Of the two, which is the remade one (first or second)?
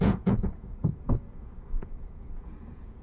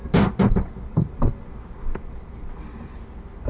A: first